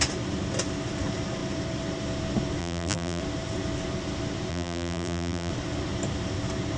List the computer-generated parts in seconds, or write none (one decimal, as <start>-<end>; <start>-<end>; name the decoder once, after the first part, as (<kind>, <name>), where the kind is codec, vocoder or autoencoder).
2.6-3.2 (vocoder, BigVGAN v2); 4.5-5.5